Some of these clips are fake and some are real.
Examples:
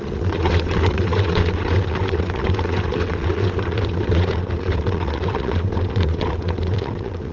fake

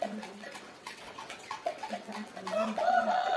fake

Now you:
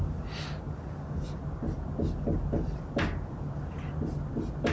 real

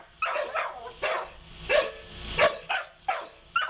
real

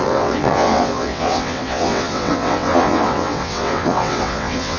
fake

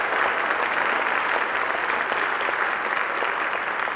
real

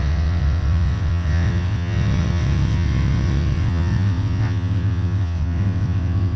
fake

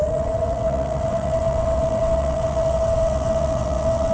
fake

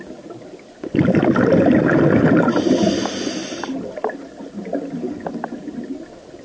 real